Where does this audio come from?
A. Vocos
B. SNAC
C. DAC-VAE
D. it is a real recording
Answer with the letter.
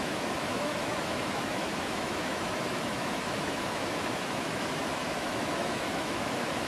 C